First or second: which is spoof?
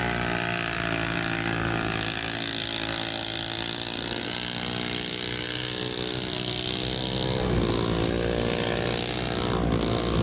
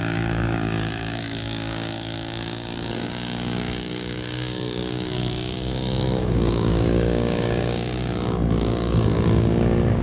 second